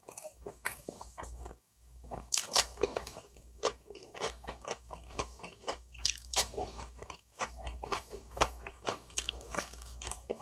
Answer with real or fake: fake